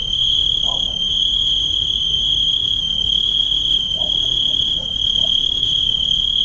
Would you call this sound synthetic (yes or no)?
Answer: yes